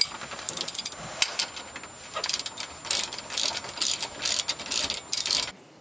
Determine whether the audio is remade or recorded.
recorded